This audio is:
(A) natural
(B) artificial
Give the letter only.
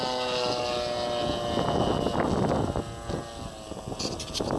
A